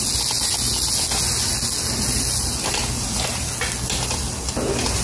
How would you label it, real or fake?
real